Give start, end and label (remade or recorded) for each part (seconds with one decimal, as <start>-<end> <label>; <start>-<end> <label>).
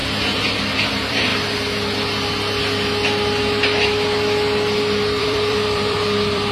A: 0.0-0.9 recorded; 0.9-1.3 remade; 1.3-5.2 recorded; 5.2-6.5 remade